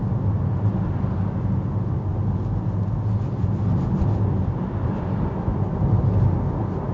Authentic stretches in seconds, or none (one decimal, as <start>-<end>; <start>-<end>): 0.0-6.9